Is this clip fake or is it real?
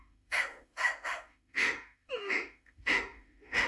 fake